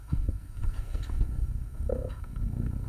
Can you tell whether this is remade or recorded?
remade